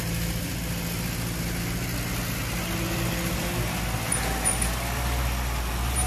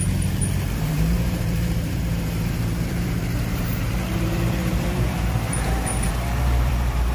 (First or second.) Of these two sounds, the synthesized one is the second